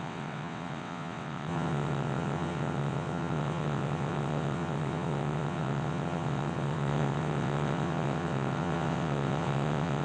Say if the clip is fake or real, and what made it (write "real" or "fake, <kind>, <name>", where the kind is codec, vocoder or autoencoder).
fake, vocoder, WaveNeXt